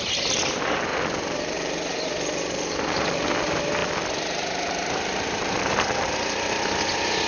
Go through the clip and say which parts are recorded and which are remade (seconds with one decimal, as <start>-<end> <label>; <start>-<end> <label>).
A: 0.0-0.9 recorded; 0.9-1.9 remade; 1.9-3.8 recorded; 3.8-6.1 remade; 6.1-7.3 recorded

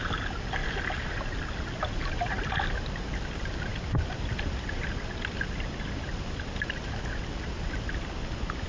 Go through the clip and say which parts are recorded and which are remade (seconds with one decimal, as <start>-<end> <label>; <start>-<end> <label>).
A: 0.0-8.7 recorded

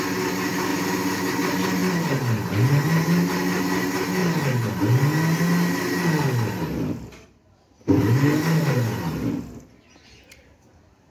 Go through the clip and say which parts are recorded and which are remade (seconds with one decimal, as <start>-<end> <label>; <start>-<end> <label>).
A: 0.0-11.1 recorded

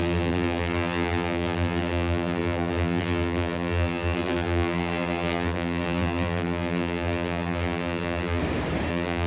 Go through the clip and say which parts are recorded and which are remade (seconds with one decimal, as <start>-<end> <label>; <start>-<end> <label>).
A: 0.0-8.4 remade; 8.4-8.9 recorded; 8.9-9.3 remade

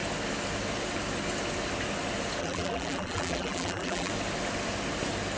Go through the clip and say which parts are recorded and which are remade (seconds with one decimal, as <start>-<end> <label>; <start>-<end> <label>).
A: 0.0-2.4 recorded; 2.4-4.1 remade; 4.1-5.4 recorded

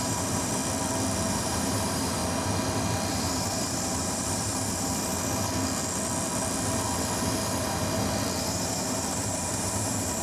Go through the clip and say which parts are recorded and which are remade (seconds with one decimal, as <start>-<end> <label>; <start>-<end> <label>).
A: 0.0-0.6 remade; 0.6-1.3 recorded; 1.3-2.2 remade; 2.2-3.1 recorded; 3.1-5.1 remade; 5.1-8.4 recorded; 8.4-10.2 remade

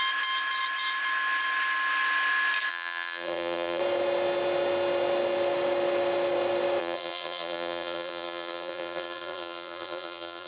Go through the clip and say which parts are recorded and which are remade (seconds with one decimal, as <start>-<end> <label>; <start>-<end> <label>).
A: 0.0-2.7 recorded; 2.7-3.8 remade; 3.8-6.8 recorded; 6.8-10.5 remade